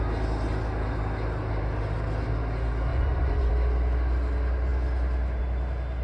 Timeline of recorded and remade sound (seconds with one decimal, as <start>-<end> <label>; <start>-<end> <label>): 0.0-2.9 recorded; 2.9-3.5 remade; 3.5-6.0 recorded